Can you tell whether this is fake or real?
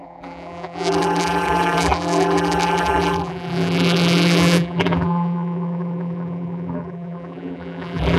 fake